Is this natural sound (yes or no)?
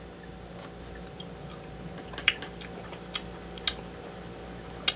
yes